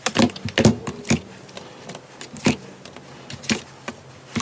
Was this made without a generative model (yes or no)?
yes